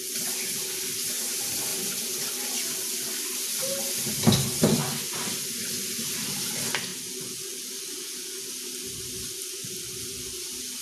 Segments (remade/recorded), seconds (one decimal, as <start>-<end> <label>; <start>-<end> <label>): 0.0-10.8 recorded